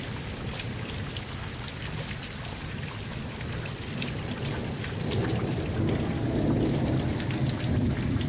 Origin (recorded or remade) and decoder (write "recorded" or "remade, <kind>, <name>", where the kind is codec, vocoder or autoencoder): recorded